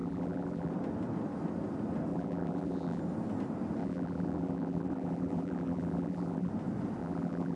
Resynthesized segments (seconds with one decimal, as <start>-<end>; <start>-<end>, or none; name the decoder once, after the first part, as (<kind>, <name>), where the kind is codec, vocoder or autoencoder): 0.0-0.7 (vocoder, BigVGAN v2); 2.1-3.0; 3.8-6.5; 7.0-7.6